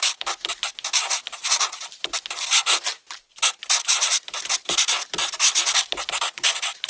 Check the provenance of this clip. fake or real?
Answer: real